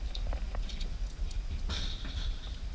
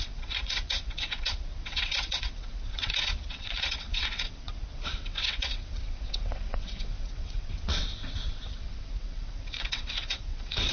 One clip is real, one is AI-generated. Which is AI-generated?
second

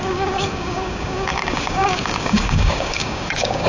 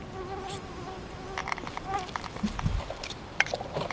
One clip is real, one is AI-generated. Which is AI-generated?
first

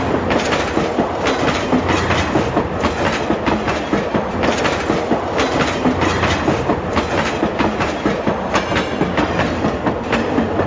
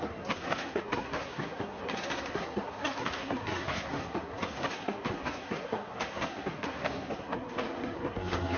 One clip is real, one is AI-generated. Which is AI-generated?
second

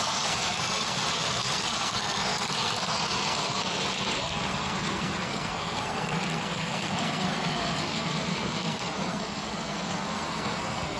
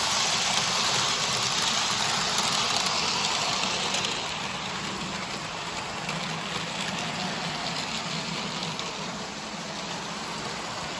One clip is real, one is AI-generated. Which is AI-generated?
first